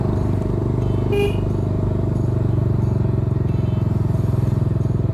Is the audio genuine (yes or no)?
yes